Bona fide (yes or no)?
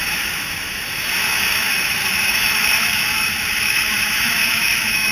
no